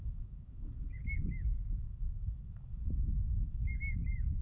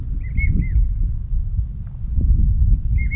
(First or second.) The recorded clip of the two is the second